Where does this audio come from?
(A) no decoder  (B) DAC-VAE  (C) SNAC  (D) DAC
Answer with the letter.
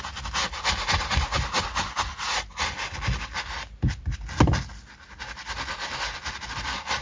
A